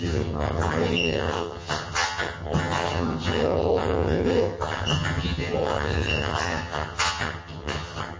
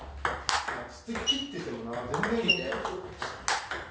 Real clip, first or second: second